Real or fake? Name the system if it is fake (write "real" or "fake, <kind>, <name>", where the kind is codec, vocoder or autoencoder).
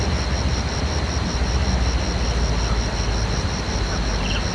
real